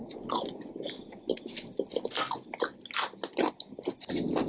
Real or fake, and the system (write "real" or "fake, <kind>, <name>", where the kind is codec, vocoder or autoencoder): real